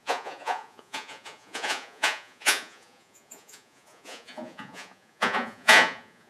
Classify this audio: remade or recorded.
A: remade